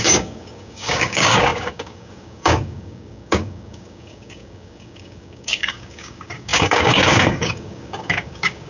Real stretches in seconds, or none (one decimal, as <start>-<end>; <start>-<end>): none